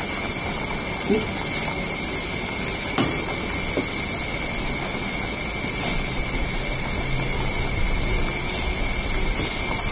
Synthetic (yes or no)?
no